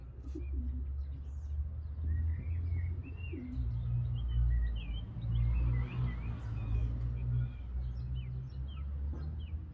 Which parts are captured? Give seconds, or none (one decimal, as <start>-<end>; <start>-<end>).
0.0-9.7

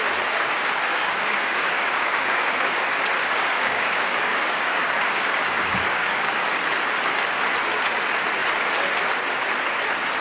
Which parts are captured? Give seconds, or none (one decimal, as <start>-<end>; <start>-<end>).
0.0-0.9; 2.8-3.2; 6.6-10.2

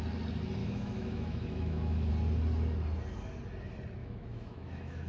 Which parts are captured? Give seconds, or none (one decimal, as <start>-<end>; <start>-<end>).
0.0-0.6; 2.1-4.0

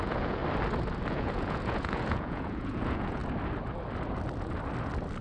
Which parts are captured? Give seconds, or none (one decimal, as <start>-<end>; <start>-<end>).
0.4-1.1; 3.2-5.2

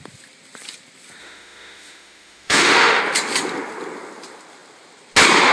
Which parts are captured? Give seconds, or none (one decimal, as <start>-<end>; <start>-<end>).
0.0-1.2; 3.0-5.5